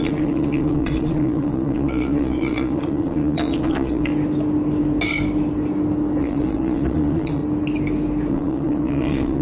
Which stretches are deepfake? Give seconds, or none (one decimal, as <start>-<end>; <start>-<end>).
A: 0.0-4.1; 6.2-7.4; 8.3-9.4